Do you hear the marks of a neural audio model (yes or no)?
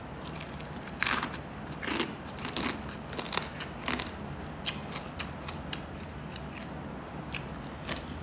no